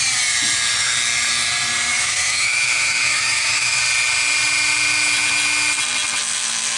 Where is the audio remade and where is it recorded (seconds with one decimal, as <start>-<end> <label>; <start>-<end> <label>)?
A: 0.0-1.9 recorded; 1.9-3.8 remade; 3.8-6.8 recorded